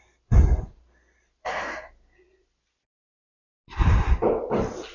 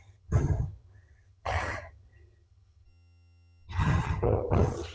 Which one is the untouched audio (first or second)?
first